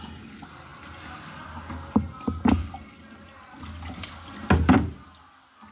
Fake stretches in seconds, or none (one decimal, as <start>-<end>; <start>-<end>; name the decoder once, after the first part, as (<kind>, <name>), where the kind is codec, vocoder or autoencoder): none